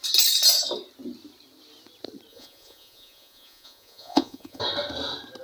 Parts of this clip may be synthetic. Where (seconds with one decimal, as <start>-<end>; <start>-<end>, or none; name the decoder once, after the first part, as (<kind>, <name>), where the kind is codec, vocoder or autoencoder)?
2.3-4.6 (vocoder, Vocos)